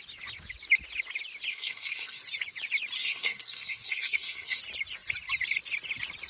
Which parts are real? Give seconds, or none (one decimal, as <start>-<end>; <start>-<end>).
0.0-1.5; 2.2-3.0; 4.6-6.3